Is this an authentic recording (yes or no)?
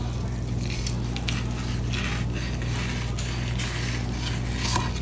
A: yes